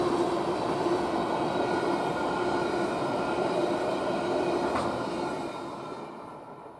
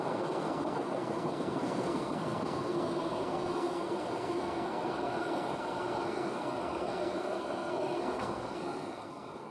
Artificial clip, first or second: second